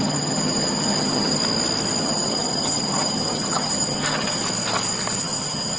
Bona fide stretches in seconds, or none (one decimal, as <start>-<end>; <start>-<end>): 1.4-2.0; 4.4-5.2